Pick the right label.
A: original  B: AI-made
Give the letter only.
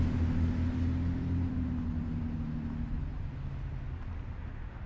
A